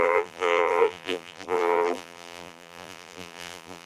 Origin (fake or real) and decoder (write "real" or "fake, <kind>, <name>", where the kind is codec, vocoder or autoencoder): fake, vocoder, BigVGAN v2